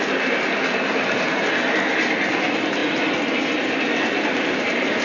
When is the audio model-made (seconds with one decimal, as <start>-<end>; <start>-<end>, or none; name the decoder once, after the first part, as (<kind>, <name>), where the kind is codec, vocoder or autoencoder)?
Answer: none